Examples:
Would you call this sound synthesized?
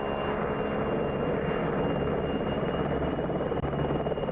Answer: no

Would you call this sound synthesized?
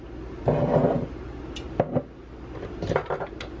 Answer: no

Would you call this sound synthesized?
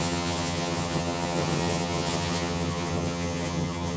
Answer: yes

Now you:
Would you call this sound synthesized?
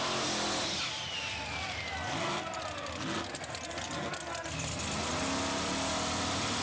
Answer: no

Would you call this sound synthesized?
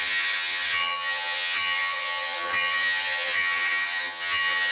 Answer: yes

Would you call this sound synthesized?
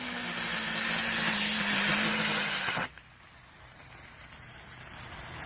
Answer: no